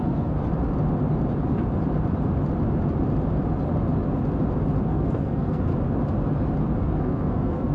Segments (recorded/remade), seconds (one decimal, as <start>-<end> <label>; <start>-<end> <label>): 0.0-0.4 remade; 0.4-4.8 recorded; 4.8-5.7 remade; 5.7-6.8 recorded; 6.8-7.7 remade